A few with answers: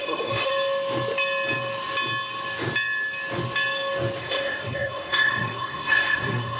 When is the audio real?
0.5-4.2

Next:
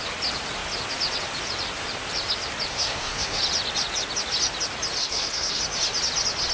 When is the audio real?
0.0-2.7; 3.4-5.0; 5.6-6.5

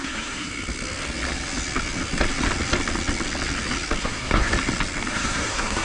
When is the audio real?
0.5-4.0; 4.5-5.1

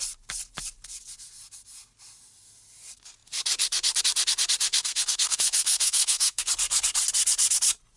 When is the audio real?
0.0-4.7; 6.5-8.0

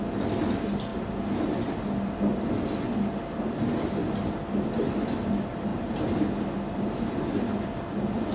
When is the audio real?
0.0-8.3

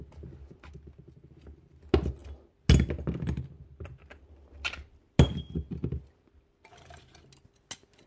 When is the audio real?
0.0-8.1

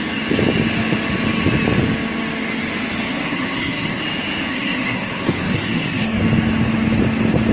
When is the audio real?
0.0-3.1; 4.0-4.5; 6.2-7.5